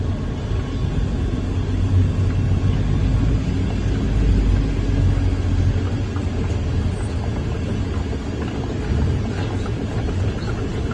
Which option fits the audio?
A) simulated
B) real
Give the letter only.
B